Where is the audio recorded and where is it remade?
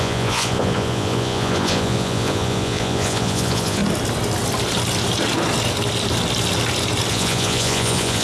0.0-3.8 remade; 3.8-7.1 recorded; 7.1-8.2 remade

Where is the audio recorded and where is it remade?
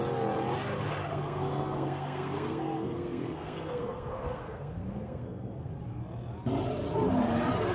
0.0-1.1 recorded; 1.1-5.7 remade; 5.7-7.7 recorded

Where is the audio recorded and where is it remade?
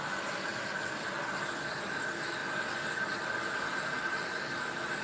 0.0-5.0 recorded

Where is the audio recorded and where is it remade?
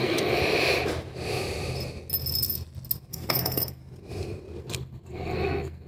0.0-0.4 remade; 0.4-3.1 recorded; 3.1-3.8 remade; 3.8-4.6 recorded; 4.6-5.9 remade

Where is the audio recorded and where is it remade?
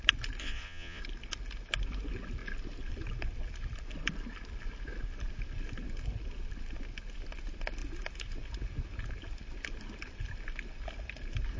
0.0-0.4 recorded; 0.4-1.0 remade; 1.0-11.6 recorded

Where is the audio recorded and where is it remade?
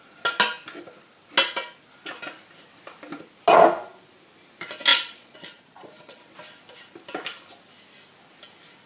0.0-4.9 recorded; 4.9-6.3 remade; 6.3-8.9 recorded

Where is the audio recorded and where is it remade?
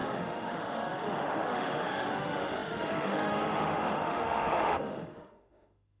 0.0-6.0 remade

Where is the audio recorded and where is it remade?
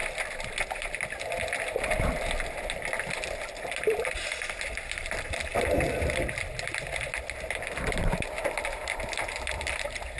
0.0-10.2 remade